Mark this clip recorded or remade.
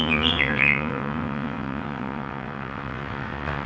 remade